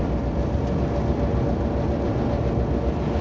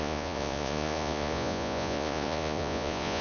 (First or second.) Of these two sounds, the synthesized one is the second